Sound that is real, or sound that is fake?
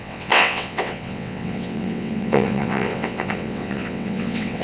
fake